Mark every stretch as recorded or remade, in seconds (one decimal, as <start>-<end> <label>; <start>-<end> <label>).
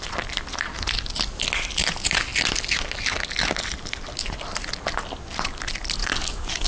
0.0-6.0 recorded; 6.0-6.7 remade